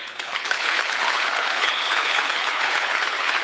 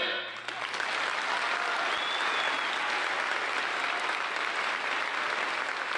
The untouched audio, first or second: second